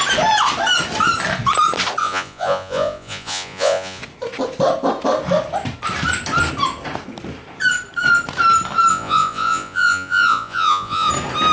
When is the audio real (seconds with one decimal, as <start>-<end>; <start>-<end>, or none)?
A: 0.0-2.0; 4.0-8.9; 11.1-11.5